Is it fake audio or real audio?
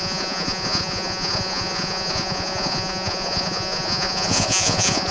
fake